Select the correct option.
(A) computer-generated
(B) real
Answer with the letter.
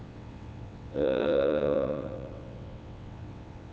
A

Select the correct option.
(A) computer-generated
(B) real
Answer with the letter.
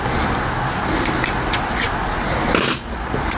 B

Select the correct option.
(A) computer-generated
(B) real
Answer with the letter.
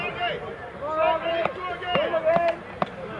B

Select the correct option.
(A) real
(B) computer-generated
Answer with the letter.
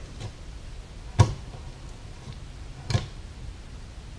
A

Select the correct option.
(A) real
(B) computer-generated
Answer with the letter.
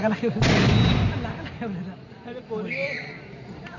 A